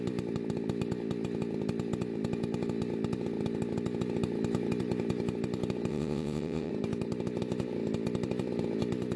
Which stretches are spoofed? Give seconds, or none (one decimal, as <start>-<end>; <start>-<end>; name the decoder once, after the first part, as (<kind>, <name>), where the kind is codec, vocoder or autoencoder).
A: 5.9-6.7 (vocoder, WaveNeXt)